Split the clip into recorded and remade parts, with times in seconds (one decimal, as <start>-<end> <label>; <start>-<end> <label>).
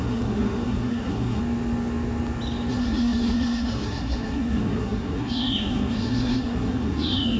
0.0-1.4 remade; 1.4-2.7 recorded; 2.7-7.4 remade